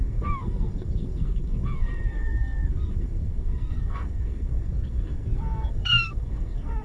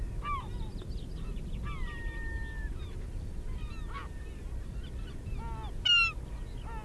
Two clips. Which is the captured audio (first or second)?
second